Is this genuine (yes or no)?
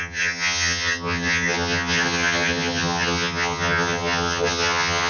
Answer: no